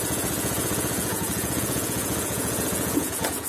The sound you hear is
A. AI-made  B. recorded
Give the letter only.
A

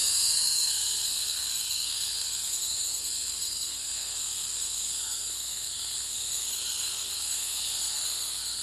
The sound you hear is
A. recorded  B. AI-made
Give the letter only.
B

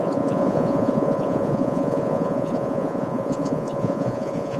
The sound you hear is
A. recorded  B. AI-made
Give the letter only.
B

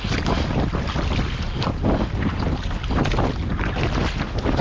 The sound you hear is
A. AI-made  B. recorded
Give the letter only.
B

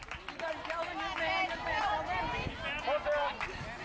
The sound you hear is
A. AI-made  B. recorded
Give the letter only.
B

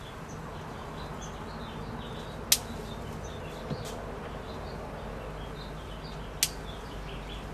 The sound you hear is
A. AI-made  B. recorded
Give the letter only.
B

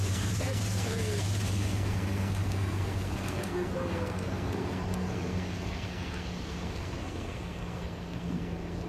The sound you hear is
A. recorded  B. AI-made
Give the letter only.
B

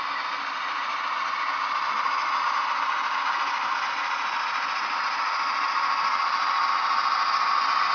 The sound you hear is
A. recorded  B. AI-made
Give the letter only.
A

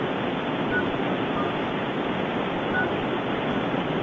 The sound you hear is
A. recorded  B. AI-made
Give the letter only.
A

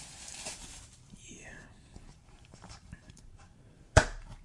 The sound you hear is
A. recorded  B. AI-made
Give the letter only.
B